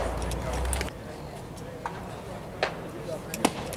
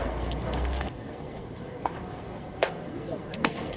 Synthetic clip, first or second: second